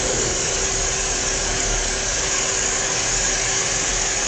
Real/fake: fake